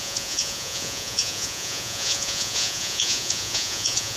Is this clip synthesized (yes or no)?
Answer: yes